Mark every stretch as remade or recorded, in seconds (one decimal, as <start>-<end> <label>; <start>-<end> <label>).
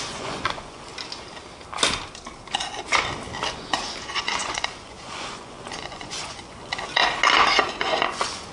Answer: 0.0-0.9 remade; 0.9-3.5 recorded; 3.5-7.0 remade; 7.0-7.7 recorded; 7.7-8.5 remade